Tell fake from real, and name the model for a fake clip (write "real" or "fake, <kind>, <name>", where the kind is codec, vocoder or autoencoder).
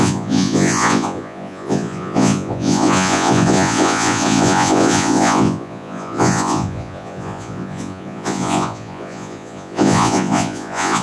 fake, vocoder, Vocos